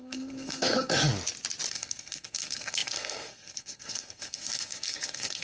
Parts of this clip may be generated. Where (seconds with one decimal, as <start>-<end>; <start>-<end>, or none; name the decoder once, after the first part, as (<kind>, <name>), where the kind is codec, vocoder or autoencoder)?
0.0-0.9 (codec, SNAC); 1.7-5.4